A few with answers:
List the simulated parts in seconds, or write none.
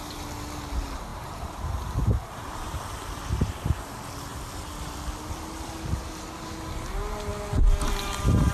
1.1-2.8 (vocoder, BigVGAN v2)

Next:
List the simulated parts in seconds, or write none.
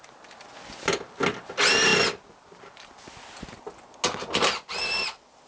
none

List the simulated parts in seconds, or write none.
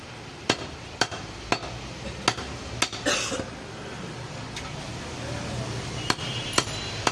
0.0-1.5 (vocoder, BigVGAN v2); 4.2-7.1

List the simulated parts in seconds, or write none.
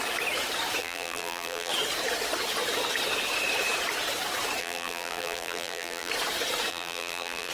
0.8-1.7 (vocoder, BigVGAN v2); 4.6-6.1; 6.7-7.5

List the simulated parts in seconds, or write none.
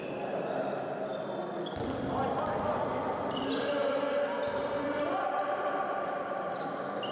0.0-1.1 (vocoder, BigVGAN v2); 2.9-3.8; 5.4-7.1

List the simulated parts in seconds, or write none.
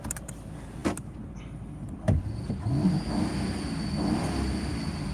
none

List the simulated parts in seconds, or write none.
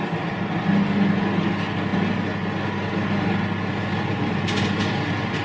none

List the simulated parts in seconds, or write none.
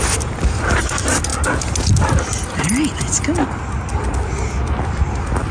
none